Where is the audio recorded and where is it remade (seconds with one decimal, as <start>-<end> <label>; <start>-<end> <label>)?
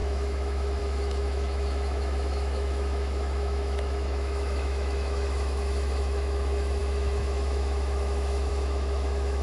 0.0-9.4 remade